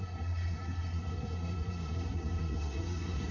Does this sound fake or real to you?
fake